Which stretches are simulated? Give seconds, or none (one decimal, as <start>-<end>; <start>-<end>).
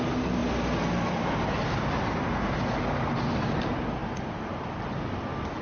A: none